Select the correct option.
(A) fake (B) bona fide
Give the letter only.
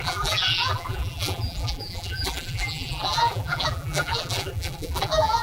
A